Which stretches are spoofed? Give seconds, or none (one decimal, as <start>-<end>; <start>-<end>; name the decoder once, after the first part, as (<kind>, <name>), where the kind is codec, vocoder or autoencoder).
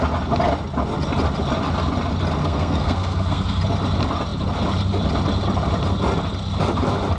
2.4-3.6 (codec, SNAC)